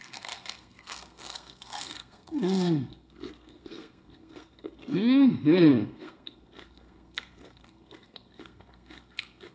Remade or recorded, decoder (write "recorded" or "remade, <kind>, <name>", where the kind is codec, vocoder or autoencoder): remade, codec, SNAC